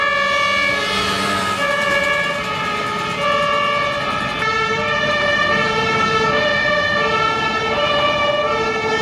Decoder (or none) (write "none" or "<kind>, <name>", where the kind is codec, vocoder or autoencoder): none